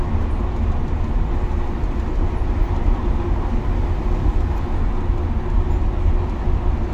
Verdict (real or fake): real